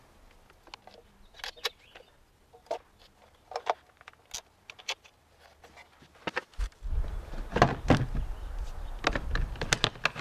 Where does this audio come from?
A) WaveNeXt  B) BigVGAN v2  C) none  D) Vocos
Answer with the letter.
C